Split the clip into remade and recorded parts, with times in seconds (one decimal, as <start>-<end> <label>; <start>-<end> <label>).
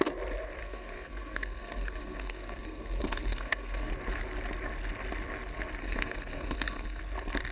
0.0-0.6 recorded; 0.6-3.9 remade; 3.9-5.8 recorded; 5.8-7.0 remade; 7.0-7.5 recorded